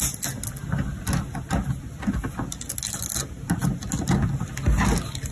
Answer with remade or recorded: recorded